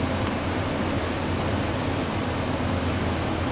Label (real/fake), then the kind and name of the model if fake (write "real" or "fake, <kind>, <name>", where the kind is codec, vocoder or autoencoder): real